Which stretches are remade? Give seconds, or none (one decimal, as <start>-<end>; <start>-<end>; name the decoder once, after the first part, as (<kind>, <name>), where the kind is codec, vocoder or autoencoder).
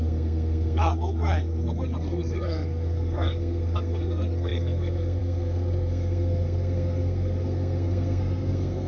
0.0-8.9 (codec, SNAC)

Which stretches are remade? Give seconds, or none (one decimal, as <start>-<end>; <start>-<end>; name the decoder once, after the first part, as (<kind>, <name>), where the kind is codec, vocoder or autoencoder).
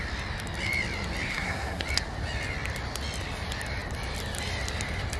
1.3-1.8 (codec, SNAC)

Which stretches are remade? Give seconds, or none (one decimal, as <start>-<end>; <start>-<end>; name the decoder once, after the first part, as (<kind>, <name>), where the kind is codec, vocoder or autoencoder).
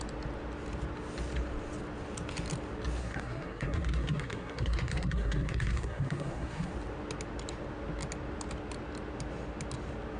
3.0-6.7 (codec, SNAC)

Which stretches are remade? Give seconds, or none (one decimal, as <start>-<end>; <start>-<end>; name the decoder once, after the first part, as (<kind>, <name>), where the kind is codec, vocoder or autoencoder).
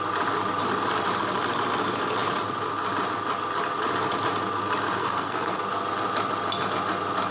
5.0-5.6 (codec, SNAC)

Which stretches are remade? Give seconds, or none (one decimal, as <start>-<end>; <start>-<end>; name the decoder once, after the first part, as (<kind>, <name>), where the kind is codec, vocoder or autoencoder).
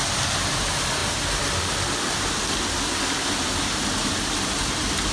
none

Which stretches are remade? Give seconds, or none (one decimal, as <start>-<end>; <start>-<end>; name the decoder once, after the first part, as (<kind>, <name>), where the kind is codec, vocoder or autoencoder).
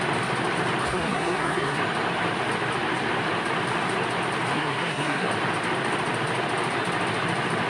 0.9-1.8 (codec, SNAC); 4.5-5.3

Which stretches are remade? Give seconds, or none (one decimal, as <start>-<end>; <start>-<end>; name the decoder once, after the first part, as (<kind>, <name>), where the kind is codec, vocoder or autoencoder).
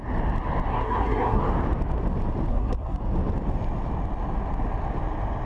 0.7-1.4 (codec, SNAC); 2.5-3.0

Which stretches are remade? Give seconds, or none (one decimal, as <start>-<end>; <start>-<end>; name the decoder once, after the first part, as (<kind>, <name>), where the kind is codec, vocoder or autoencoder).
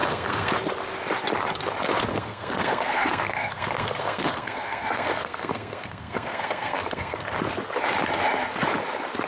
0.0-0.5 (codec, SNAC); 2.1-7.3